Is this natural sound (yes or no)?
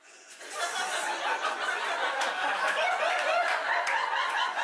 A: no